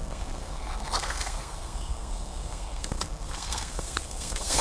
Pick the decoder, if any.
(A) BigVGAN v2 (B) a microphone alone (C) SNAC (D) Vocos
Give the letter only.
C